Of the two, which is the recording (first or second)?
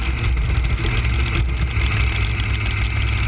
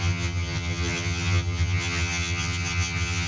first